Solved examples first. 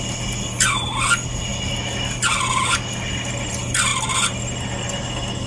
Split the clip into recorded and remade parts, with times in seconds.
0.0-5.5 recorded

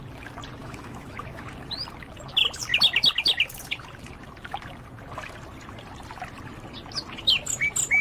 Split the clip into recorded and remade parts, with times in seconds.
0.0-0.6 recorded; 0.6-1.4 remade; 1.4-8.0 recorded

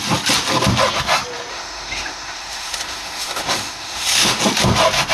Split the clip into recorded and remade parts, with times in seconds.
0.0-1.5 recorded; 1.5-4.4 remade; 4.4-5.1 recorded

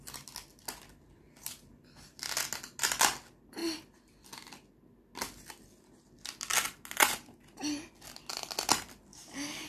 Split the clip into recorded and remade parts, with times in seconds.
0.0-9.1 recorded; 9.1-9.7 remade

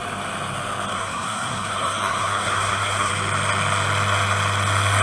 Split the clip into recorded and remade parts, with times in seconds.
0.0-0.9 recorded; 0.9-3.1 remade; 3.1-5.0 recorded

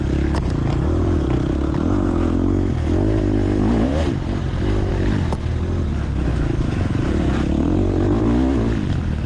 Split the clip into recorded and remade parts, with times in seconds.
0.0-1.0 recorded; 1.0-1.7 remade; 1.7-3.9 recorded; 3.9-4.9 remade; 4.9-6.3 recorded; 6.3-8.2 remade; 8.2-9.3 recorded